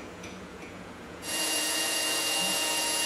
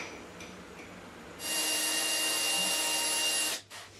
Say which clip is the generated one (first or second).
first